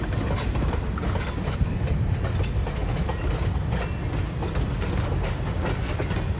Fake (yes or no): no